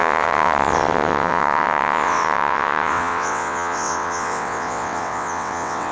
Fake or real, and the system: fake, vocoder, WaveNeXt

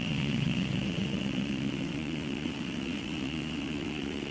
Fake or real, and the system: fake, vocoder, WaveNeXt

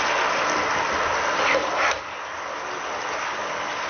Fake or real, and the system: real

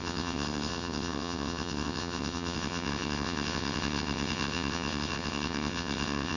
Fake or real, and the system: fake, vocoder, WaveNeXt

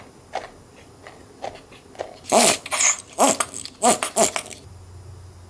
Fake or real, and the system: real